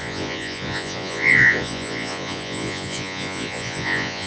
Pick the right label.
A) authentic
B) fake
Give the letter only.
B